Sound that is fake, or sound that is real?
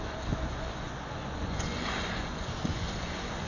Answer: fake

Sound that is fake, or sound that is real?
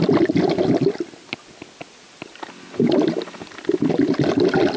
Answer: real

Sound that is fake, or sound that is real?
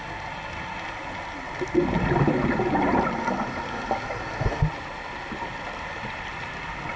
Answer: real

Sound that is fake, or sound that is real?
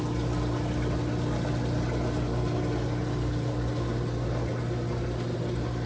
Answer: real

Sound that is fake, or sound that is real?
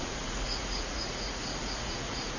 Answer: fake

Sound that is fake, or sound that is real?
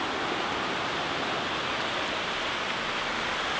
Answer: real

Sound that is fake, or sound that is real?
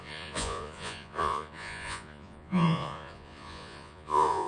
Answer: fake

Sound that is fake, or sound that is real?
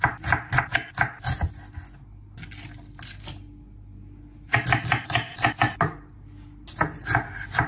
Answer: real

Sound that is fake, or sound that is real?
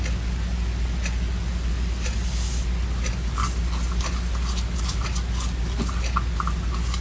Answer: real